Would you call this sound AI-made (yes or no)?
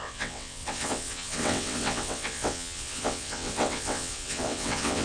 yes